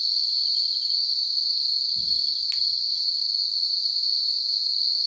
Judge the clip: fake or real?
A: real